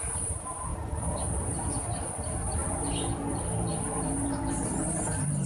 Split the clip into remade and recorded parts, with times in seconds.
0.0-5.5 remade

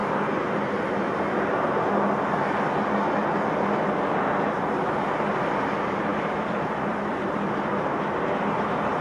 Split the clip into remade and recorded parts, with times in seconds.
0.0-0.9 remade; 0.9-3.2 recorded; 3.2-4.9 remade; 4.9-6.1 recorded; 6.1-7.7 remade; 7.7-9.0 recorded